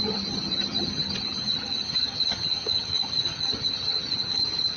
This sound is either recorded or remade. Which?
remade